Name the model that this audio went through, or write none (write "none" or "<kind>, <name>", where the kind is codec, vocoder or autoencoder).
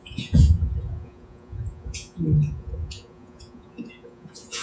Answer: vocoder, Vocos